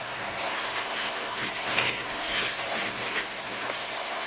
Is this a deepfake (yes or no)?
yes